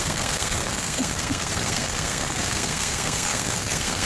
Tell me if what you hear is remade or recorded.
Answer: remade